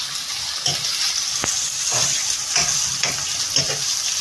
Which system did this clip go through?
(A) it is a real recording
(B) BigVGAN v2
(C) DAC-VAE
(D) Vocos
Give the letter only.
A